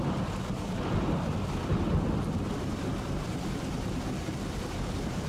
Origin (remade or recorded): remade